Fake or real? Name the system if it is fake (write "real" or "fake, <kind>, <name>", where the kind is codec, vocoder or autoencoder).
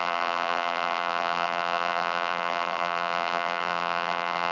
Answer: fake, vocoder, BigVGAN v2